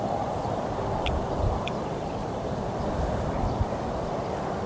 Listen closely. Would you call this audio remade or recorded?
remade